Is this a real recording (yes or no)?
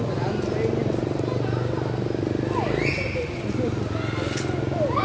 yes